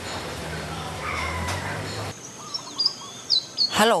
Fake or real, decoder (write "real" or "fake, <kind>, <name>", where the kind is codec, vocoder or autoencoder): fake, vocoder, BigVGAN v2